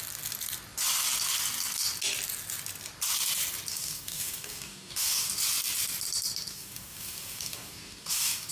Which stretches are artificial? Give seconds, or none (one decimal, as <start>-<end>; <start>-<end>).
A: 3.7-5.3; 6.5-8.5